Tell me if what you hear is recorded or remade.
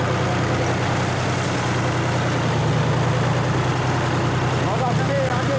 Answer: recorded